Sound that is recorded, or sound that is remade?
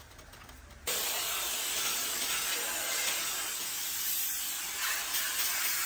recorded